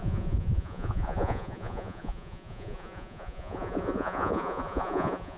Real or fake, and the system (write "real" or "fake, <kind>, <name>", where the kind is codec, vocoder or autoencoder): fake, vocoder, Vocos